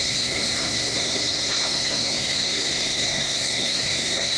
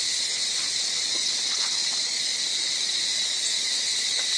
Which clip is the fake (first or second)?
first